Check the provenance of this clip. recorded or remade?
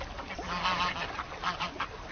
recorded